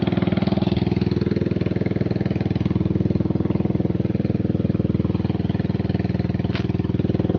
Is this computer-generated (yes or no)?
no